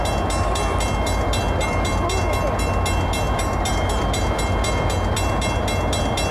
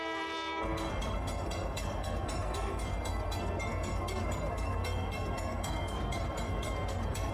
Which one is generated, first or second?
second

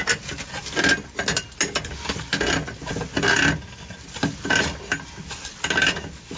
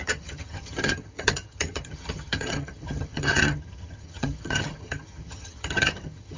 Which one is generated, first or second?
second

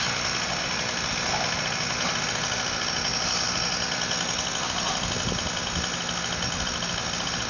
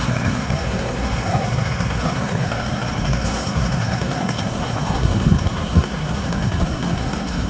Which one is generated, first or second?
second